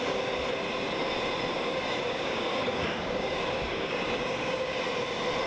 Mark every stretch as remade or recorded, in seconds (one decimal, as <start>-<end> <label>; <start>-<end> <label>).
0.0-1.5 recorded; 1.5-4.8 remade; 4.8-5.5 recorded